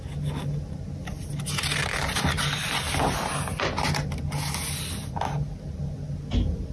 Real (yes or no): yes